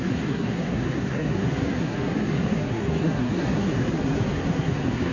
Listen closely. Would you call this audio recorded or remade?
remade